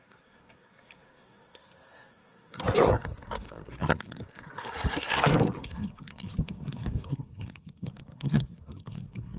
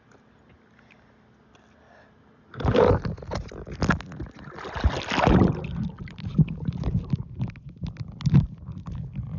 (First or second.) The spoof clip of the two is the first